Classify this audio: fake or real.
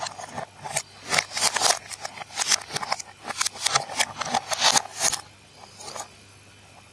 real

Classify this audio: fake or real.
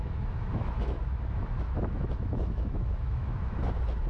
fake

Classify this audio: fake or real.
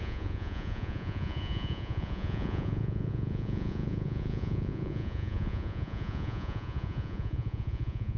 fake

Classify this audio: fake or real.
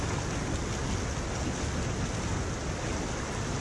real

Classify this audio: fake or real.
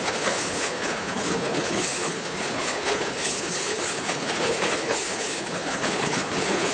fake